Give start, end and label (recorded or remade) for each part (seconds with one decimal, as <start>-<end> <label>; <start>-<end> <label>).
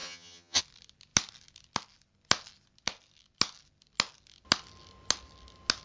0.0-0.6 remade; 0.6-5.8 recorded